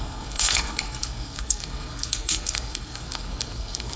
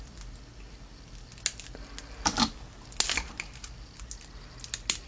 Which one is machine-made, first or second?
first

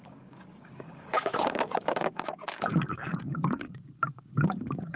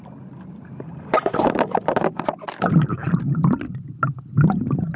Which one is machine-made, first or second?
first